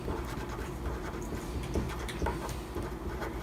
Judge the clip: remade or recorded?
recorded